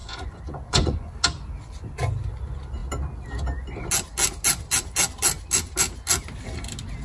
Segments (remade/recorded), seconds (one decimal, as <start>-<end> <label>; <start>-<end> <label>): 0.0-1.1 remade; 1.1-7.0 recorded